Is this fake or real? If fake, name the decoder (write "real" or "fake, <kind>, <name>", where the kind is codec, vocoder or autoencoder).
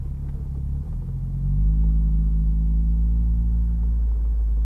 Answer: real